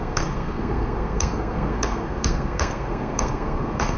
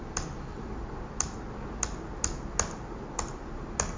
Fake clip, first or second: first